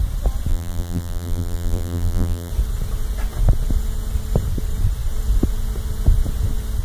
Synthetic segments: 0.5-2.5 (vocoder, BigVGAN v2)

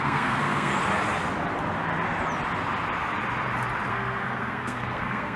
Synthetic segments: 0.0-0.7 (codec, SNAC); 3.9-5.4

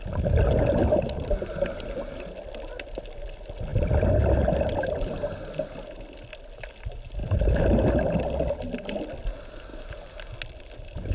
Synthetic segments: none

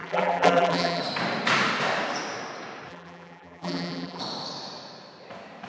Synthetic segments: 0.0-1.0 (vocoder, BigVGAN v2); 2.9-4.2